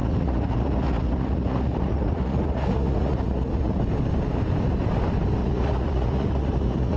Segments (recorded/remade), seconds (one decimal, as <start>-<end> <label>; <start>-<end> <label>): 0.0-3.8 remade; 3.8-5.4 recorded; 5.4-7.0 remade